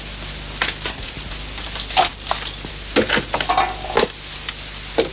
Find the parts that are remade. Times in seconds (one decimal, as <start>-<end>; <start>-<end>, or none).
none